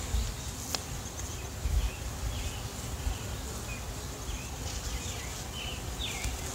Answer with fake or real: real